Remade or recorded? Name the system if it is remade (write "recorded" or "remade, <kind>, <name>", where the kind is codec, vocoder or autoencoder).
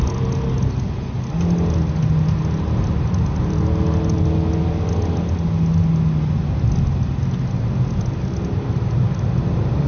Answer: recorded